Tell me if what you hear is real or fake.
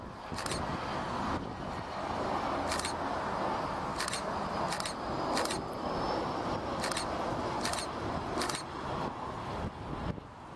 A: real